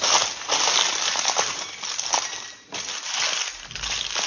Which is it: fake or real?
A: real